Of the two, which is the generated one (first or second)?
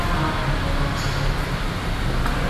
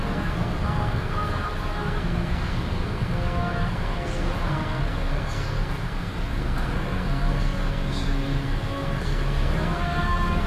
second